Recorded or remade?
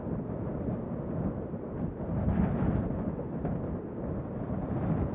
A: recorded